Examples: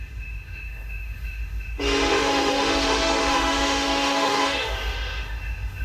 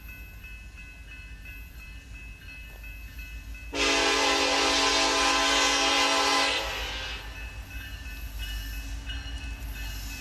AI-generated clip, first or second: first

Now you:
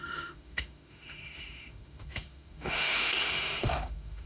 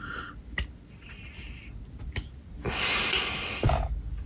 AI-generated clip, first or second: first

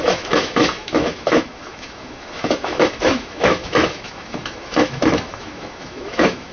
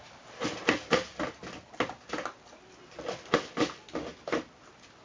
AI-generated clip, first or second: first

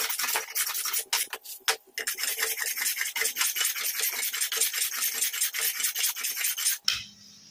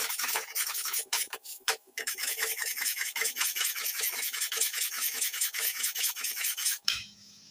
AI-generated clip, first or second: second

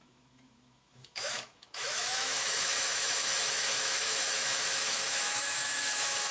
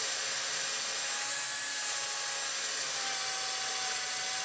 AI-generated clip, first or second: first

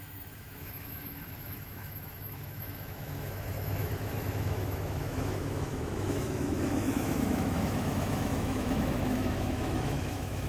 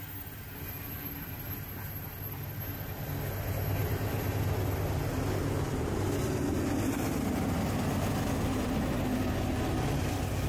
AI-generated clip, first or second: first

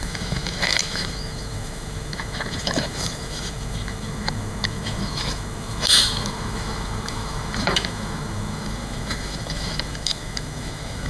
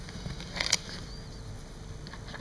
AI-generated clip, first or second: first